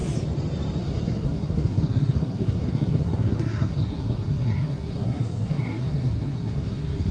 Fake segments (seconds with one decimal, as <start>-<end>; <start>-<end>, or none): 0.8-7.1